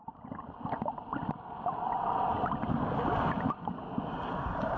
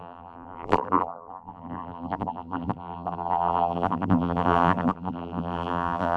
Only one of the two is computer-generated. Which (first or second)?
second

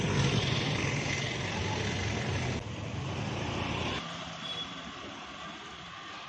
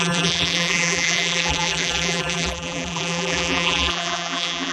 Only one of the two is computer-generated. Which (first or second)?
second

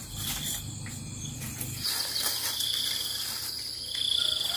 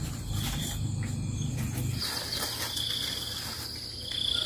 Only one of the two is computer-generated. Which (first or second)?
first